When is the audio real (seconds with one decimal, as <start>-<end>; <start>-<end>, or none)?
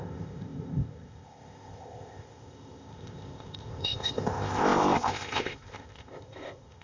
none